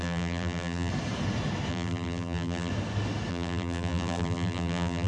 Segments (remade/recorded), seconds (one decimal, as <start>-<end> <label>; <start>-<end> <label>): 0.0-0.9 remade; 0.9-1.7 recorded; 1.7-2.7 remade; 2.7-3.3 recorded; 3.3-5.1 remade